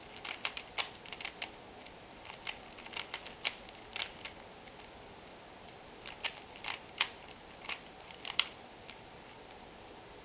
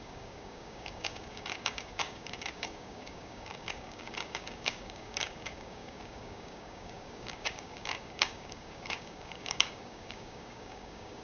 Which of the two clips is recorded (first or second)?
first